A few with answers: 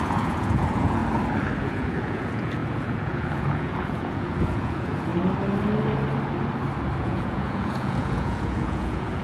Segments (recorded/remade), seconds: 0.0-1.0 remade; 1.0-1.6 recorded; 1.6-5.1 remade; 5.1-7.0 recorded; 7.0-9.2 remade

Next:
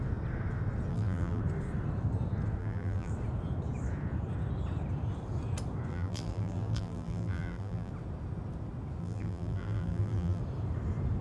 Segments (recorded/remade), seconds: 0.0-0.9 recorded; 0.9-1.4 remade; 1.4-2.6 recorded; 2.6-3.1 remade; 3.1-5.9 recorded; 5.9-7.9 remade; 7.9-9.0 recorded; 9.0-10.4 remade; 10.4-11.2 recorded